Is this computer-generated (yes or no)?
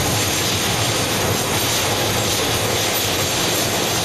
no